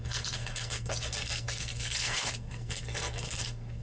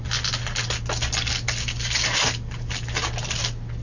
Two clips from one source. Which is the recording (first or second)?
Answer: second